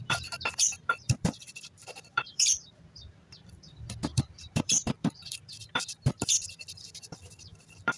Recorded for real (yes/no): no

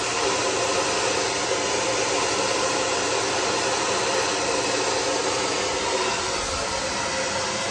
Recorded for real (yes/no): yes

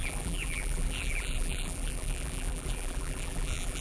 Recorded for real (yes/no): no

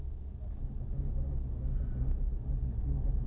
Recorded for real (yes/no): yes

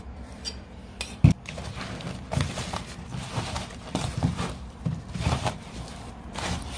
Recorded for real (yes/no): no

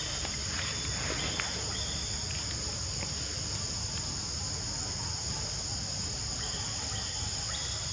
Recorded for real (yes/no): yes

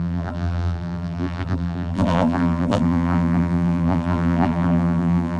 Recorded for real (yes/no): no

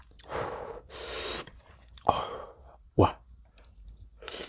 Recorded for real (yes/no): no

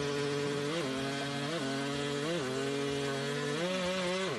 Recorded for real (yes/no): yes